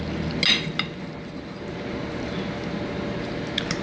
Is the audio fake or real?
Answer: real